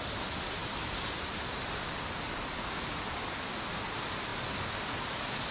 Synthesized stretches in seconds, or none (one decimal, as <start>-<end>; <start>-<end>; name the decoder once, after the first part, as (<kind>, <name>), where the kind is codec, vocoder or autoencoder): 0.6-2.1 (vocoder, BigVGAN v2)

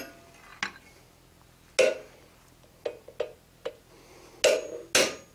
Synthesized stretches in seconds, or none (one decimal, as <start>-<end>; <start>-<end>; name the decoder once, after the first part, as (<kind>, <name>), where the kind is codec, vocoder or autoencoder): none

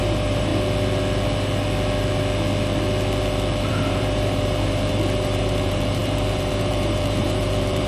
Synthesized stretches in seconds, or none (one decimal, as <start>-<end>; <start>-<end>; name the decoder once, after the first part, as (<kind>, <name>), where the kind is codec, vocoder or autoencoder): 0.0-0.5 (vocoder, BigVGAN v2); 3.7-7.9

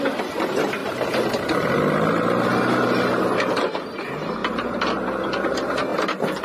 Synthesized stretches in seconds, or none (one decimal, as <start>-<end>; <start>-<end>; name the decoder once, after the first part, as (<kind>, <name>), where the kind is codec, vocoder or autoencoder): 4.4-4.9 (vocoder, BigVGAN v2)

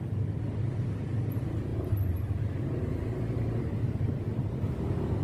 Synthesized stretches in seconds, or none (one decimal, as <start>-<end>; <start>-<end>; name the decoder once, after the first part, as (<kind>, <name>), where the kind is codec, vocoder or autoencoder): none

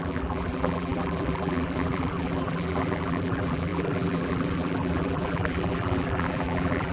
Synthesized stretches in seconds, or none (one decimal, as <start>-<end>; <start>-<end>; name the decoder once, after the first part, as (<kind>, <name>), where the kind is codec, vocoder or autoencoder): 0.0-6.9 (vocoder, BigVGAN v2)

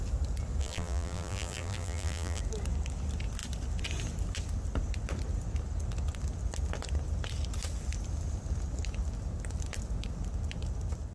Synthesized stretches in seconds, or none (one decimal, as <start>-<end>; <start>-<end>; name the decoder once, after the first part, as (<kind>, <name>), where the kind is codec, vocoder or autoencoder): 0.6-2.4 (vocoder, BigVGAN v2)

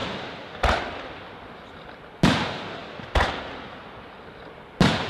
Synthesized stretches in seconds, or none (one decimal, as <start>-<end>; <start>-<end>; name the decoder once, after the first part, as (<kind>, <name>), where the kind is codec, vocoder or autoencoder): 0.0-1.2 (vocoder, BigVGAN v2); 2.8-4.1